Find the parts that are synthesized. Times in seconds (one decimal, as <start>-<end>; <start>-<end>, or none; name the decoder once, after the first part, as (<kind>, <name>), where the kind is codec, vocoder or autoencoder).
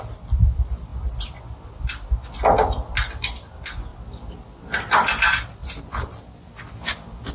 none